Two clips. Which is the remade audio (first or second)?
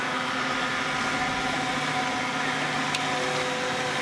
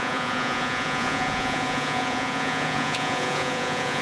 second